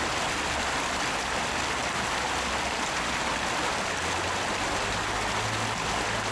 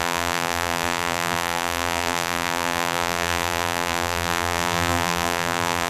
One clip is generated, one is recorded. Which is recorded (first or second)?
first